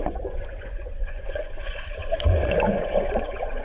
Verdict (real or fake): fake